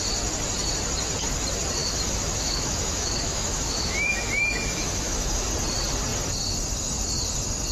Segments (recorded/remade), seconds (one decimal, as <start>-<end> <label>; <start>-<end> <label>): 0.0-1.8 recorded; 1.8-5.5 remade; 5.5-7.7 recorded